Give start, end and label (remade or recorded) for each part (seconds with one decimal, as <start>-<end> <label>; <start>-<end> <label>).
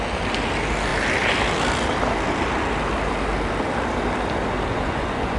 0.0-4.7 recorded; 4.7-5.4 remade